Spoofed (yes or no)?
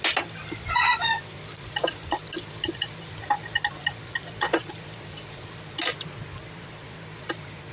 no